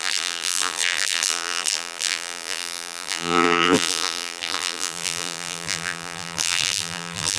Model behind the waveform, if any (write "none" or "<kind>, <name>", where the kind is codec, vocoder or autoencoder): vocoder, BigVGAN v2